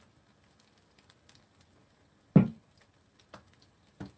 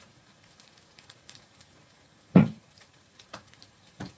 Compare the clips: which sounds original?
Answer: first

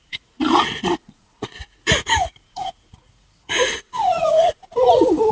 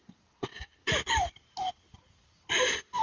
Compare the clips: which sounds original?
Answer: second